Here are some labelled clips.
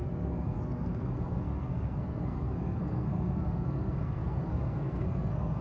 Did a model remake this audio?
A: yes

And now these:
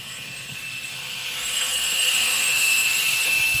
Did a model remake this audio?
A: yes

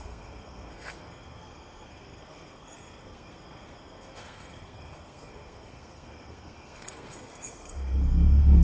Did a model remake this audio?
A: yes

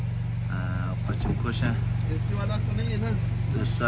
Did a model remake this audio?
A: no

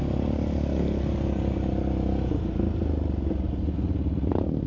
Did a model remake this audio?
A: no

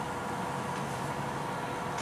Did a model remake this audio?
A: no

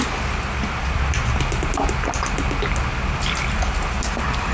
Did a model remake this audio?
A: no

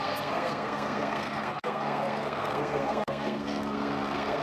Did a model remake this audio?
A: yes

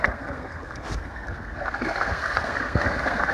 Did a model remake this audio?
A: yes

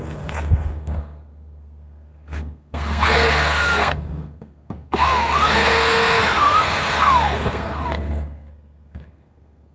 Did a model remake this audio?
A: yes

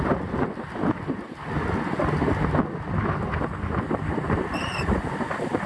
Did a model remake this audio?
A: no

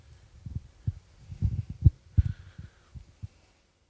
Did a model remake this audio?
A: no